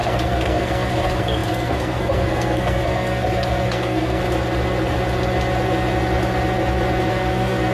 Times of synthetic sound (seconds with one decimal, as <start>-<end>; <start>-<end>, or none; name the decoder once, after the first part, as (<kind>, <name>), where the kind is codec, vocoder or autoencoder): 0.0-4.2 (codec, SNAC); 7.1-7.7